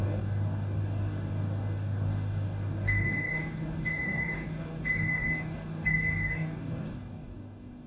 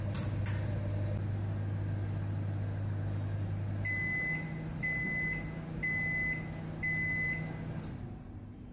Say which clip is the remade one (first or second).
first